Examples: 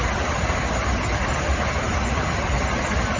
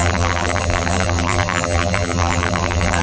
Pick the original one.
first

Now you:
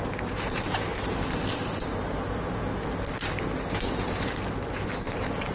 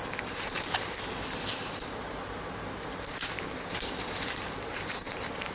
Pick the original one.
first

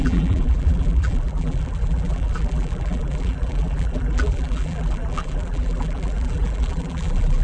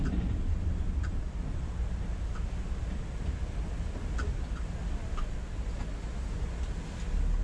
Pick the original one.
second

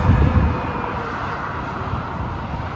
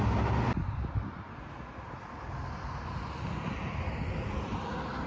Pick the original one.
second